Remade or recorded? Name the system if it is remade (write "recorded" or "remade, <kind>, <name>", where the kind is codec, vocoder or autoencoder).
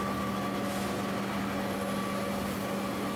recorded